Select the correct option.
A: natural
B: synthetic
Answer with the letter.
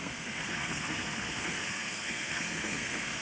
B